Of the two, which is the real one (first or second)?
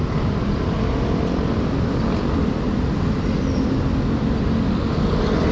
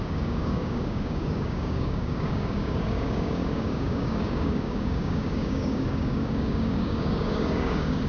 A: first